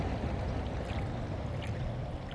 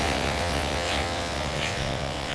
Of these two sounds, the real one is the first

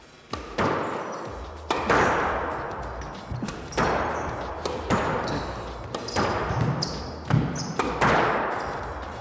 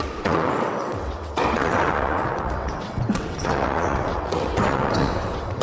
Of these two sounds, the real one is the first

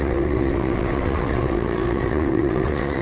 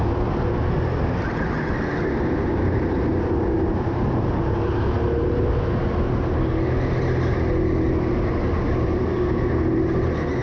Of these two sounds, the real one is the second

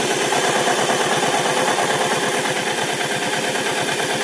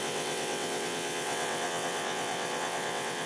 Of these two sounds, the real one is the first